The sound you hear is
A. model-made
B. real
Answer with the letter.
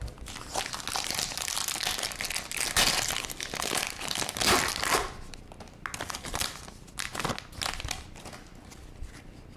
B